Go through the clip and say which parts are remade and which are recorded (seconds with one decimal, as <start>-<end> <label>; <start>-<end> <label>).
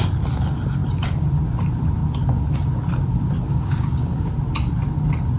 0.0-3.5 recorded; 3.5-4.3 remade; 4.3-5.4 recorded